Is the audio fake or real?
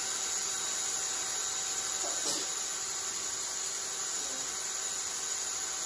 real